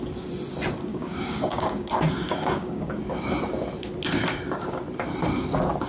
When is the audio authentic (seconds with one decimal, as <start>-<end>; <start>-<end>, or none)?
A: 0.0-0.9; 3.0-5.9